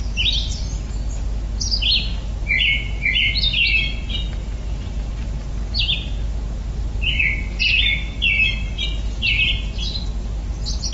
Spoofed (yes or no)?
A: no